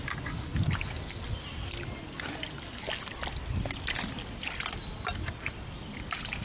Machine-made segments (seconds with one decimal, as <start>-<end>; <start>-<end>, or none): none